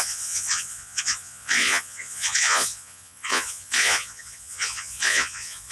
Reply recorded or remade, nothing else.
remade